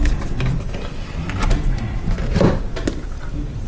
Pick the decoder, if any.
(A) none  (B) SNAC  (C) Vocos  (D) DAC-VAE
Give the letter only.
A